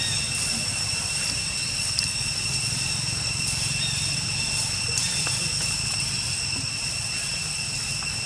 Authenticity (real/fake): real